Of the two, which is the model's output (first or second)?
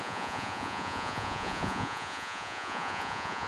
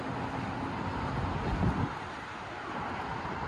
first